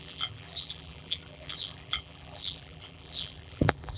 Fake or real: fake